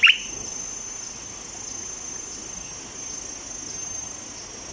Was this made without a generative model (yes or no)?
yes